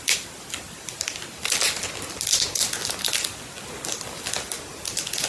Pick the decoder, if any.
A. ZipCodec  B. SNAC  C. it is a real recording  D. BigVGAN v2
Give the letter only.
C